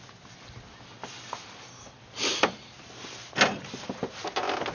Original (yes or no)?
yes